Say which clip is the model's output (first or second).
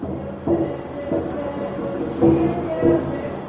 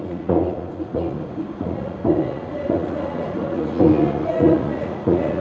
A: second